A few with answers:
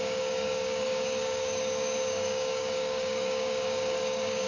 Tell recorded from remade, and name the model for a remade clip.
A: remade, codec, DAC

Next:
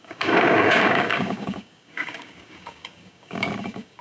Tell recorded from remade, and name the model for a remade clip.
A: remade, codec, DAC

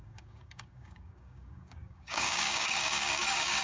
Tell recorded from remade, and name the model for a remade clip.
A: remade, codec, DAC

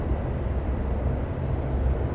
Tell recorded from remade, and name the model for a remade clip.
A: recorded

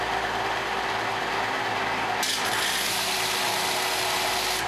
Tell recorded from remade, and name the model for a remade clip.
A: recorded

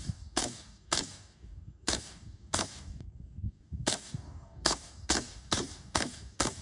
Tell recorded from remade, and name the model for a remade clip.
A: remade, codec, DAC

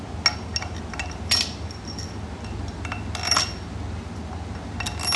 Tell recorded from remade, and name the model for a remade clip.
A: recorded